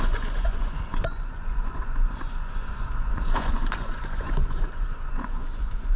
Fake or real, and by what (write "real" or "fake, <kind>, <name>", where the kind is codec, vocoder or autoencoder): fake, vocoder, Vocos